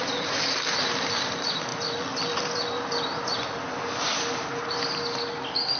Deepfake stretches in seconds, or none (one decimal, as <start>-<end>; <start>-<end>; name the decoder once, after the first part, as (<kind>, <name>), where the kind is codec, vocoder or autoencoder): 1.7-4.8 (vocoder, BigVGAN v2)